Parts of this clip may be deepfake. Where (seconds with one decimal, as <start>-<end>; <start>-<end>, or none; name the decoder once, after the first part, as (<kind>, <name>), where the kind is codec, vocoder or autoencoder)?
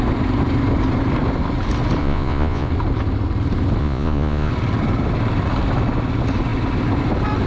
2.0-2.7 (vocoder, Vocos); 3.8-4.5